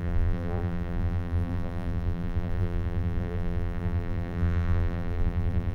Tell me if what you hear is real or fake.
fake